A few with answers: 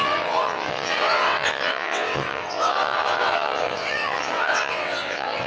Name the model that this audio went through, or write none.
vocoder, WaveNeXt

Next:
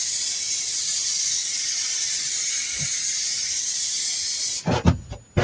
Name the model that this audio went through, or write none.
none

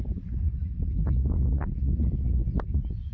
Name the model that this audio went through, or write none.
vocoder, Vocos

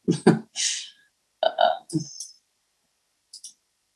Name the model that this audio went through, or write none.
none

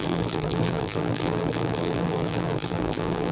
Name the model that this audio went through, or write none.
vocoder, BigVGAN v2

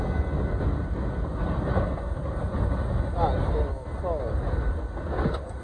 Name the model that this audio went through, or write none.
none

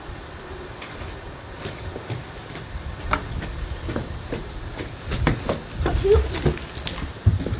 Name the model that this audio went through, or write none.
none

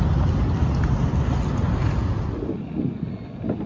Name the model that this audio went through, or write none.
none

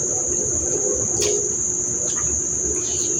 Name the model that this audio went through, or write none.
none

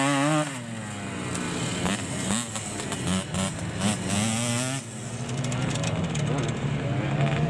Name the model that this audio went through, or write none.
none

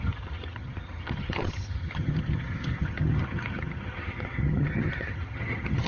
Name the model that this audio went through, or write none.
vocoder, HiFi-GAN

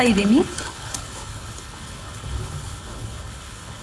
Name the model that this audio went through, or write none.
codec, HILCodec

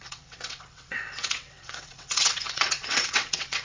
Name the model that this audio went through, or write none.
vocoder, WaveNeXt